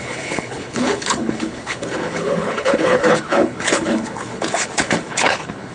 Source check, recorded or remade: remade